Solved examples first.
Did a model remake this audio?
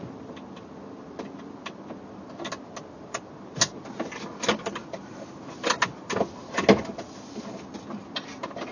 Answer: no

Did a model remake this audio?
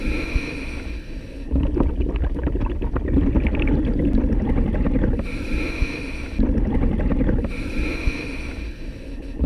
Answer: no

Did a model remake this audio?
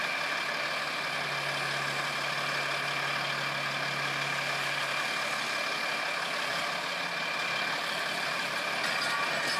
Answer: no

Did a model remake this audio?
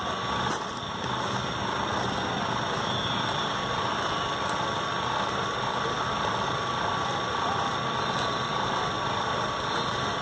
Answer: no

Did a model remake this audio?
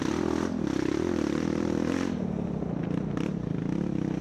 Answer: no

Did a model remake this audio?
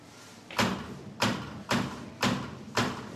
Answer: no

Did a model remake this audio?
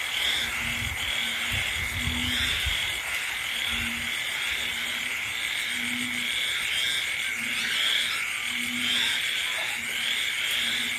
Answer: no